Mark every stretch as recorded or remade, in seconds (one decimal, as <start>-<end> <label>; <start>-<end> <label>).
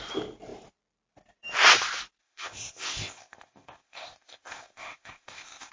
0.0-2.2 recorded; 2.2-5.7 remade